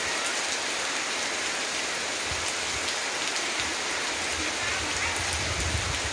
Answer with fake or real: real